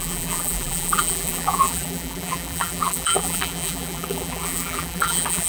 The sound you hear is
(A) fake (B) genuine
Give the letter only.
A